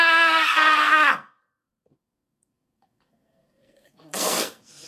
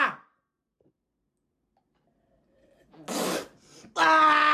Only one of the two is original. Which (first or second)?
second